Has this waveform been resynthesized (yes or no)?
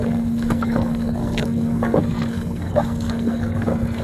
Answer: yes